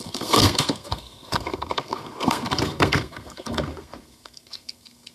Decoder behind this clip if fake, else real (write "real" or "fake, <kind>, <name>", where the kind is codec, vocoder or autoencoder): fake, codec, SNAC